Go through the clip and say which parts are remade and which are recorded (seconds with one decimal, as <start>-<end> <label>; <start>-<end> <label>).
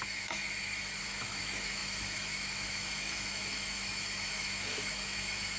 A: 0.0-0.4 remade; 0.4-1.0 recorded; 1.0-5.6 remade